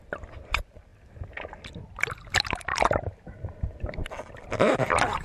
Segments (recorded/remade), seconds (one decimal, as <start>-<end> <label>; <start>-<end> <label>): 0.0-0.9 remade; 0.9-1.7 recorded; 1.7-2.7 remade; 2.7-4.7 recorded; 4.7-5.2 remade